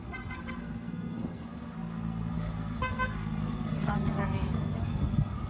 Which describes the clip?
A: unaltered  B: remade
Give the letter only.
B